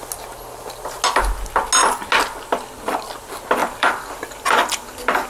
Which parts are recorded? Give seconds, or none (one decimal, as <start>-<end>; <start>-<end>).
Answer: 0.0-3.6